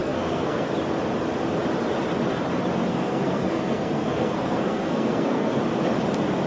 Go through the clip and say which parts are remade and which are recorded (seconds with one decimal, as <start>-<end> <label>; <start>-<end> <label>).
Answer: 0.0-0.7 remade; 0.7-2.9 recorded; 2.9-5.6 remade; 5.6-6.5 recorded